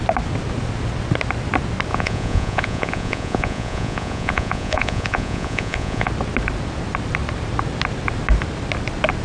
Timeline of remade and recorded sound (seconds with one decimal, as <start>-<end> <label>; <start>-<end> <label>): 0.0-1.9 recorded; 1.9-6.1 remade; 6.1-9.2 recorded

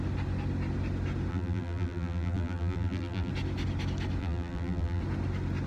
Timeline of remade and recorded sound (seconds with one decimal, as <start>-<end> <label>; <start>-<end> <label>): 0.0-1.3 recorded; 1.3-3.3 remade; 3.3-4.2 recorded; 4.2-5.0 remade; 5.0-5.7 recorded